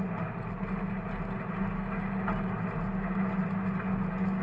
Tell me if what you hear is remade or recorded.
recorded